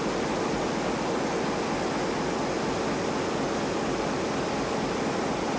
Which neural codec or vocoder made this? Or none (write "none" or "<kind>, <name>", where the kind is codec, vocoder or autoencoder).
none